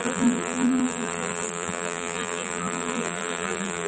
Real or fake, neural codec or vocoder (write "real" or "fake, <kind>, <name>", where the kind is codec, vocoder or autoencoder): fake, vocoder, BigVGAN v2